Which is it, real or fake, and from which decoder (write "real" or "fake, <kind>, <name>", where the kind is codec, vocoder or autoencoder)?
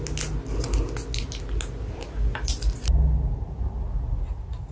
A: real